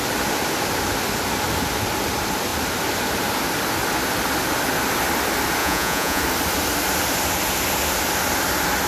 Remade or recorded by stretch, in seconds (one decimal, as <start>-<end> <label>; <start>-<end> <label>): 0.0-5.6 recorded; 5.6-6.2 remade; 6.2-8.9 recorded